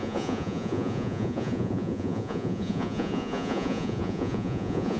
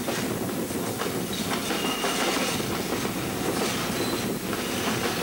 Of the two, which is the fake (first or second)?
first